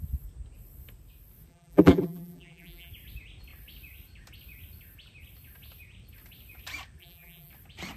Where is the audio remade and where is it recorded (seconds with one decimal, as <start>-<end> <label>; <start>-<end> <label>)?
0.0-1.5 recorded; 1.5-2.9 remade; 2.9-7.0 recorded; 7.0-7.5 remade; 7.5-8.0 recorded